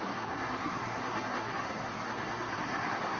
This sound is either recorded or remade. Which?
remade